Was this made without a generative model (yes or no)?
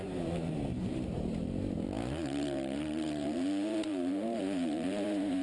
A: no